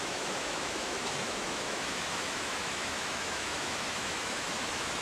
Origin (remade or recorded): remade